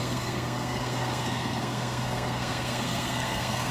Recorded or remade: remade